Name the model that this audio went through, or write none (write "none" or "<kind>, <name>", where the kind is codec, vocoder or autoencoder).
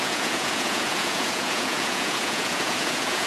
vocoder, Vocos